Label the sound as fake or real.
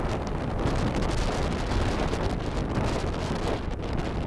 real